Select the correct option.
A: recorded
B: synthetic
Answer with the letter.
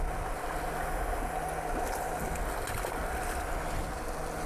A